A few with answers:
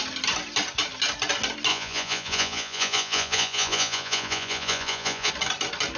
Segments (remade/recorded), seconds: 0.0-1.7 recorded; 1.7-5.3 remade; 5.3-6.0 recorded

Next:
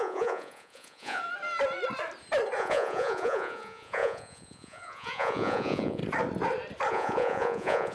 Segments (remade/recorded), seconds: 0.0-1.2 remade; 1.2-2.6 recorded; 2.6-6.0 remade; 6.0-6.9 recorded; 6.9-7.9 remade

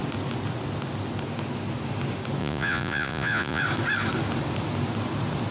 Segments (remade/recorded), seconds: 0.0-2.4 recorded; 2.4-3.6 remade; 3.6-5.5 recorded